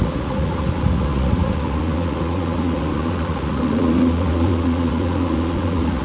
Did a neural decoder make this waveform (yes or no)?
yes